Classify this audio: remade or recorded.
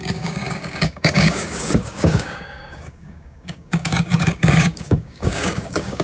remade